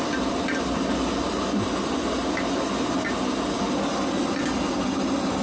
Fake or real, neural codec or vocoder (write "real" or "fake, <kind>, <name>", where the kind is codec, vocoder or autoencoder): real